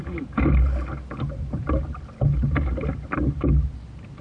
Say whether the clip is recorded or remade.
recorded